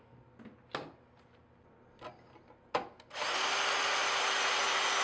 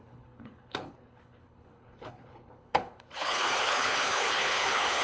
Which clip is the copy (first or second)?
second